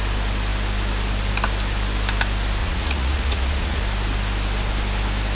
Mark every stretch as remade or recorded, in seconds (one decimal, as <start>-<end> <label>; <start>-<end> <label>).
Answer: 0.0-2.6 recorded; 2.6-3.8 remade; 3.8-5.3 recorded